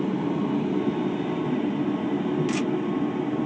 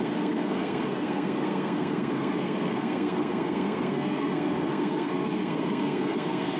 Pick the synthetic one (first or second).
second